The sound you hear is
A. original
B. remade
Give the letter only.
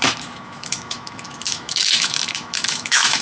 B